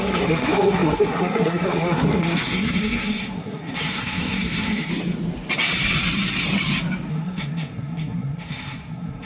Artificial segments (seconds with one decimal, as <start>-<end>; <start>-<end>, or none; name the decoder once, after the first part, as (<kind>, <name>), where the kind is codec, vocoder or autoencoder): 0.0-4.9 (codec, SNAC); 7.1-9.3